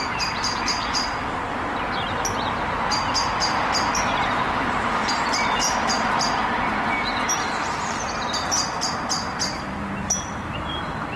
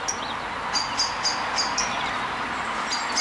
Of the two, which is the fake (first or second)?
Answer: first